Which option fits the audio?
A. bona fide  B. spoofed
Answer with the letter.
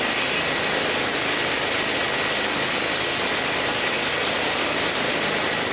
A